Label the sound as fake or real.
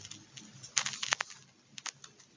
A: real